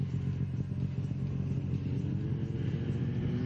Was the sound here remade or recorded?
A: recorded